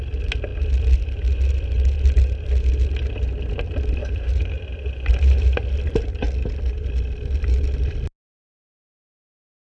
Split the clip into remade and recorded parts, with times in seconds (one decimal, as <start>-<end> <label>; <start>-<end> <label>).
0.0-4.0 recorded; 4.0-4.7 remade; 4.7-9.7 recorded